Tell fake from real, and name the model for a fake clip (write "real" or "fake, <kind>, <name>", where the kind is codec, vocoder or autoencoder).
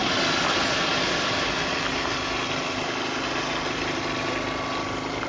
real